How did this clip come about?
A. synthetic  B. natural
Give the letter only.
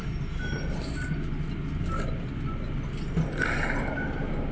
B